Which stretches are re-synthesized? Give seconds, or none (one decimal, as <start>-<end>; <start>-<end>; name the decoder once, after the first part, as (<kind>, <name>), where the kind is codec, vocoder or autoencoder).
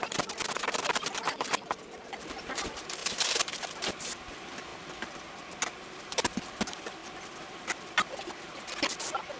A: 0.0-4.7 (vocoder, BigVGAN v2); 5.7-9.4